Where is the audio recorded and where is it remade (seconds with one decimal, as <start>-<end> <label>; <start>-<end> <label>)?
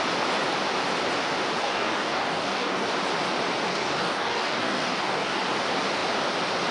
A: 0.0-1.6 recorded; 1.6-2.9 remade; 2.9-3.7 recorded; 3.7-5.4 remade; 5.4-6.7 recorded